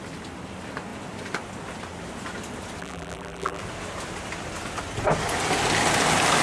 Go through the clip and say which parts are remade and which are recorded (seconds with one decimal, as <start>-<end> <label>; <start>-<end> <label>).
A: 0.0-2.8 recorded; 2.8-3.6 remade; 3.6-6.4 recorded